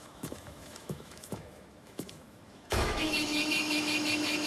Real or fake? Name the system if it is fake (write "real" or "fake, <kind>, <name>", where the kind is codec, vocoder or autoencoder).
fake, autoencoder, DAC-VAE